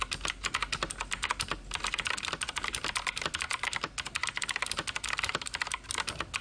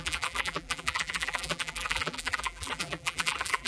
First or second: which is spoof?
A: second